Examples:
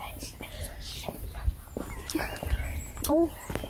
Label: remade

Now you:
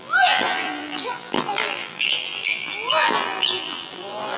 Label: remade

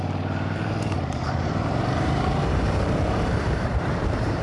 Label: remade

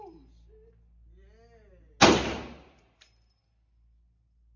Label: recorded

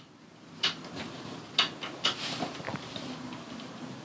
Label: recorded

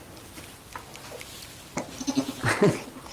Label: recorded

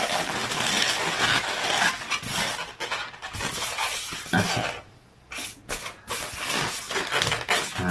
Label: recorded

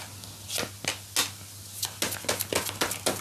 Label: recorded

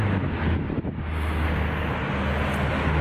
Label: recorded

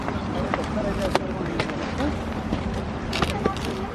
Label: remade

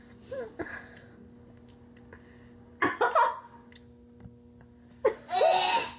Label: recorded